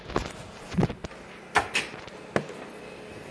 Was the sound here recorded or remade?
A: recorded